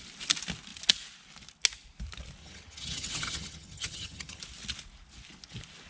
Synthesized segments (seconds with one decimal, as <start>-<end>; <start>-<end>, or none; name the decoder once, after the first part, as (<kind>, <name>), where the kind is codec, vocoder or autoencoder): 2.4-4.4 (vocoder, HiFi-GAN)